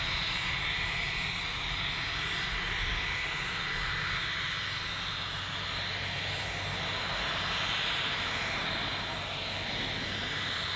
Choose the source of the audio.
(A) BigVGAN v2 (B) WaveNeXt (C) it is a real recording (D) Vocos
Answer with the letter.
C